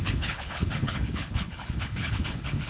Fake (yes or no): yes